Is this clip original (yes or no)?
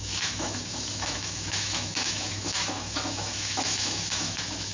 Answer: no